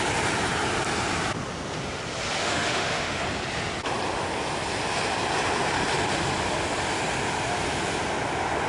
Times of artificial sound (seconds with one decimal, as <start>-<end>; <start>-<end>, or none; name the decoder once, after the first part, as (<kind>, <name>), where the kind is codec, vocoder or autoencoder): 2.4-3.2 (autoencoder, DAC-VAE)

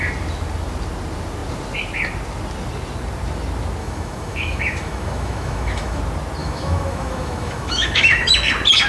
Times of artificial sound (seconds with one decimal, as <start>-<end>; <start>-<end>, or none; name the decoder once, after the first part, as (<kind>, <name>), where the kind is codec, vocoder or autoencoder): 3.8-6.0 (autoencoder, DAC-VAE); 6.4-8.3

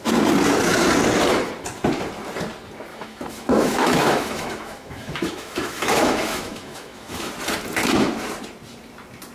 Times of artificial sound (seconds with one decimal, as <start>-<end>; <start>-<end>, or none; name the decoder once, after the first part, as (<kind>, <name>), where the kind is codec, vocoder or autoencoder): 2.9-7.3 (autoencoder, DAC-VAE)

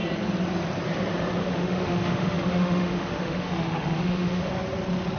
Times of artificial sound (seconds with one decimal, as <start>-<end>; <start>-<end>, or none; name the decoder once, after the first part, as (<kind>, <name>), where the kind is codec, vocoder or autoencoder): 1.4-4.5 (autoencoder, DAC-VAE)

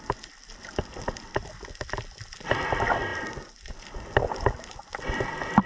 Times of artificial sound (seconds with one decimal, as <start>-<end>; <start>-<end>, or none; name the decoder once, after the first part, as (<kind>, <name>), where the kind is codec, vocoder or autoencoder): none